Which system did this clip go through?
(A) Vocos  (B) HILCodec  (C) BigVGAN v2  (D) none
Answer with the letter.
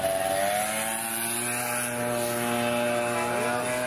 D